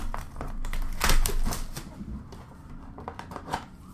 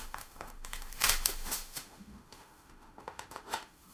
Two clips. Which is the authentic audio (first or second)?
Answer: first